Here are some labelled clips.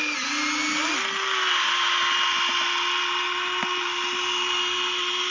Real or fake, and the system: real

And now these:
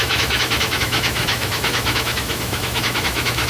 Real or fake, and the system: fake, autoencoder, DAC-VAE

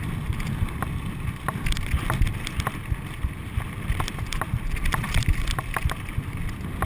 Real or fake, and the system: real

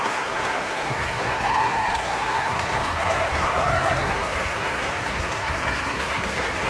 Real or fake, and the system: fake, codec, SNAC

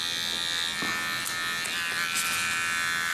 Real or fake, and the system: real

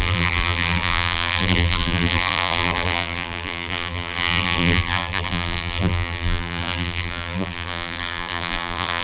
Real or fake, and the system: fake, vocoder, BigVGAN v2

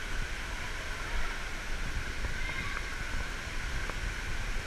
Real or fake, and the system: real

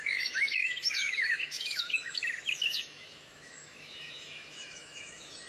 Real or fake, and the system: fake, autoencoder, DAC-VAE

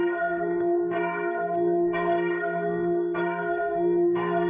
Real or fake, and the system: fake, codec, SNAC